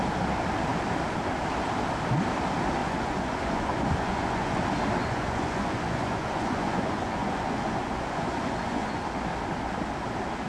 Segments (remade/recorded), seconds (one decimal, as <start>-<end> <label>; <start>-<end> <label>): 0.0-2.8 recorded; 2.8-4.6 remade; 4.6-5.0 recorded; 5.0-9.0 remade; 9.0-10.5 recorded